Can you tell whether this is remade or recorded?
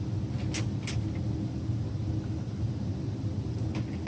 recorded